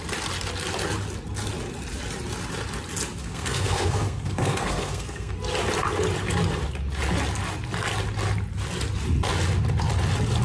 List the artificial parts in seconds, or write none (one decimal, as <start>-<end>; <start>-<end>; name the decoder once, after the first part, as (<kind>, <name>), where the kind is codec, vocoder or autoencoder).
3.2-5.3 (codec, SNAC)